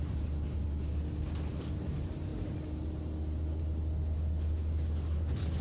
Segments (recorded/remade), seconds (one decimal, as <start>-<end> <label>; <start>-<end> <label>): 0.0-5.6 recorded